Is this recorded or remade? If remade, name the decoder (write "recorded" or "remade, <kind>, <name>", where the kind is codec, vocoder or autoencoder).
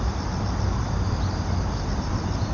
recorded